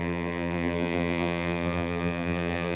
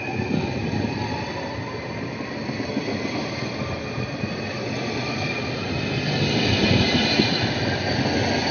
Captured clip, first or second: second